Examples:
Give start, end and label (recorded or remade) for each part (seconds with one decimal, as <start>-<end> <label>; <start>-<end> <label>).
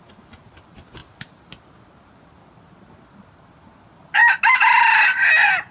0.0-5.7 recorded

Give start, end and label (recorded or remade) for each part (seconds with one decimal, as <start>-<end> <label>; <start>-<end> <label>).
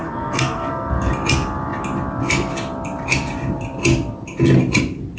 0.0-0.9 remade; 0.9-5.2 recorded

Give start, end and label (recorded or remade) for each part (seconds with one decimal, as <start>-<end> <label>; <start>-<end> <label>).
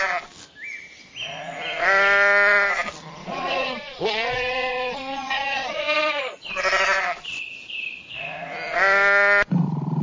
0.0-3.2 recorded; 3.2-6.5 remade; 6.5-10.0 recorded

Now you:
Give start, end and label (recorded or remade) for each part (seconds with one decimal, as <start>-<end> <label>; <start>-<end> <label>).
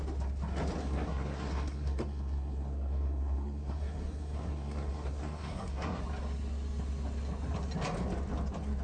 0.0-0.8 recorded; 0.8-6.0 remade; 6.0-8.8 recorded